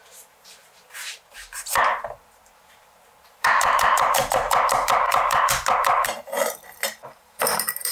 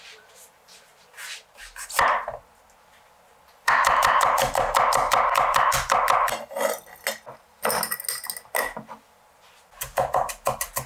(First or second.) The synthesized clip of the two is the first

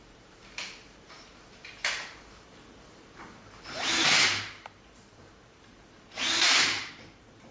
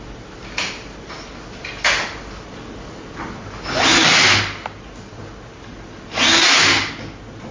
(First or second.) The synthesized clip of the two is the first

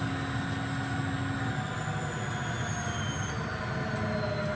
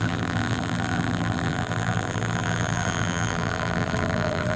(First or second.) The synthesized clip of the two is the second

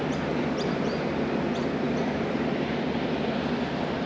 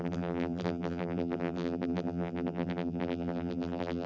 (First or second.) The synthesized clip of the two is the second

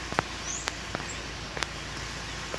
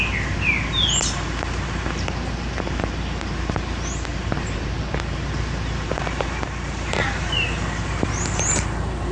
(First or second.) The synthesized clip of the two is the second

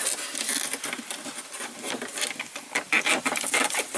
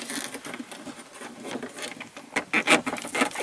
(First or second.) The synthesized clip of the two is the first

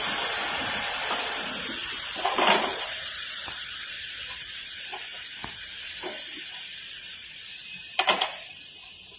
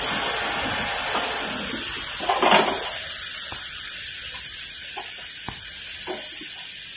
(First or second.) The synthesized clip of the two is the first